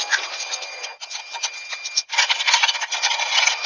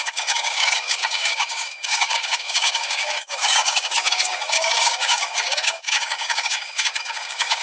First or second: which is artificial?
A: second